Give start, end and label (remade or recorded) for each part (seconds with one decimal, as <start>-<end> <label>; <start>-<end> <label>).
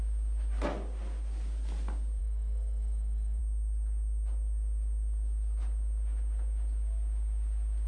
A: 0.0-2.2 recorded; 2.2-3.4 remade; 3.4-7.9 recorded